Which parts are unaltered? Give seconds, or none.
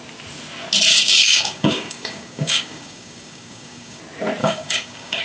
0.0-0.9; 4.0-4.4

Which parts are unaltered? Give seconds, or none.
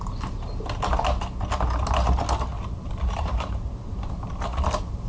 0.0-2.5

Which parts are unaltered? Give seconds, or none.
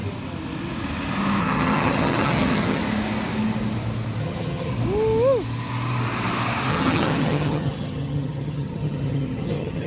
0.0-1.4; 2.8-4.2; 4.7-6.7